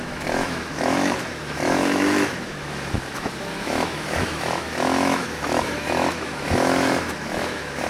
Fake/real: fake